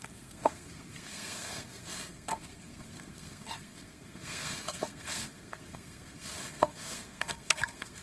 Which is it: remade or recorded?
remade